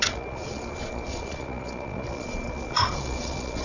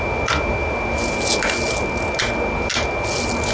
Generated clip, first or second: first